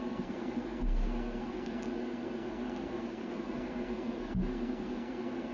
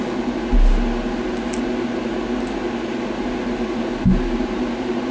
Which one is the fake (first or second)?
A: first